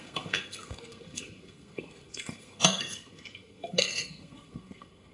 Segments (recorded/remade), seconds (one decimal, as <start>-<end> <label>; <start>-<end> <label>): 0.0-5.1 remade